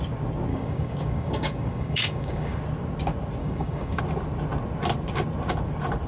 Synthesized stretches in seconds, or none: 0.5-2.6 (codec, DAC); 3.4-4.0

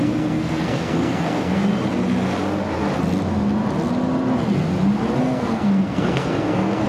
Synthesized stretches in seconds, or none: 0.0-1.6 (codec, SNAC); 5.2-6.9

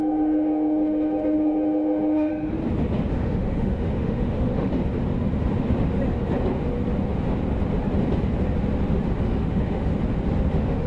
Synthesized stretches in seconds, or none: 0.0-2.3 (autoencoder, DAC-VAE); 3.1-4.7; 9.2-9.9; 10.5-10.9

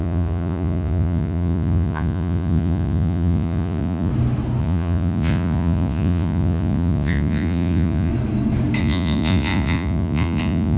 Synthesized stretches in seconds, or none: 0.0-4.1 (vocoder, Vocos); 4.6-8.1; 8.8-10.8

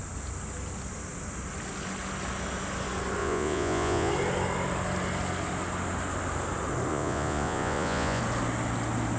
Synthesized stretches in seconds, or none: 3.2-4.1 (vocoder, Vocos); 6.9-8.2

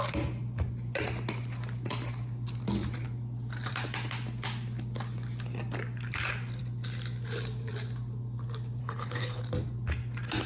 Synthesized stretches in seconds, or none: 8.8-9.4 (codec, HILCodec)

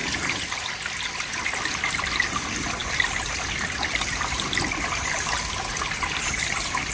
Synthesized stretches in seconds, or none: 2.8-5.2 (vocoder, BigVGAN v2)